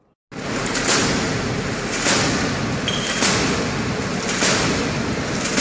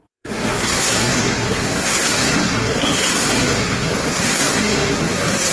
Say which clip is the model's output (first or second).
second